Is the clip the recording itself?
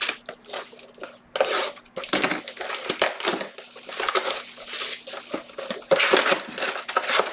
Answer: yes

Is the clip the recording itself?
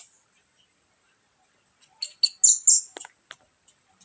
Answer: yes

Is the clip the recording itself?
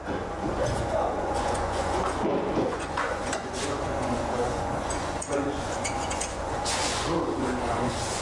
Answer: no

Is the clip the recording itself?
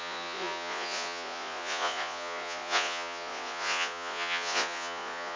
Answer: no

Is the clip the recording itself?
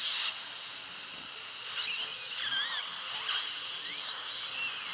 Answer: yes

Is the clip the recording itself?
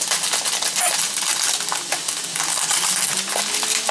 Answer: yes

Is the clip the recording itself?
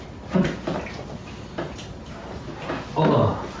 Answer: yes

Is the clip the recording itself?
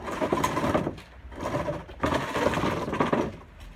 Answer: yes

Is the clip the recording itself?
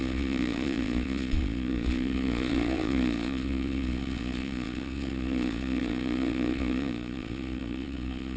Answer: no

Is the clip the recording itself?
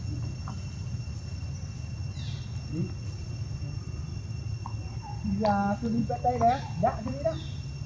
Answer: yes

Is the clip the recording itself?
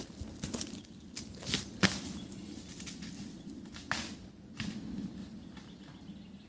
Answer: yes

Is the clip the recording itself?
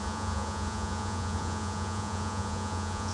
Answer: no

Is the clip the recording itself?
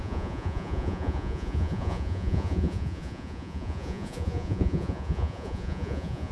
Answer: no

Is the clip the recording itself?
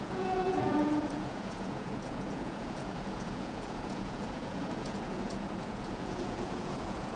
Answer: no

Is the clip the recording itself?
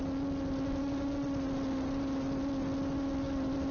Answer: yes